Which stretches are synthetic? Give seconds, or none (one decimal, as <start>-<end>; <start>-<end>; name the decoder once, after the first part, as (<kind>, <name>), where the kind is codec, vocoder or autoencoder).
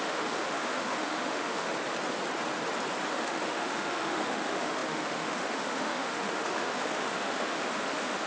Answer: 0.0-1.7 (autoencoder, DAC-VAE); 3.1-8.3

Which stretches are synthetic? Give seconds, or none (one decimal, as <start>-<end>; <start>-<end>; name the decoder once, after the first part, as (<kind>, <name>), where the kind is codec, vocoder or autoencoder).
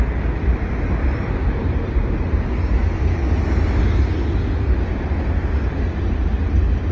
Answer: none